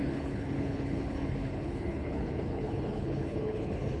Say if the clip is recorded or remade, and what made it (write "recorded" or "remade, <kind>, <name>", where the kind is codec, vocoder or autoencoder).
remade, codec, HILCodec